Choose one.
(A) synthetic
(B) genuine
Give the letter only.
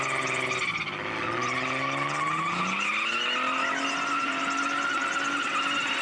B